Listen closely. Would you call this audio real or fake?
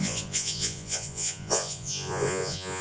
fake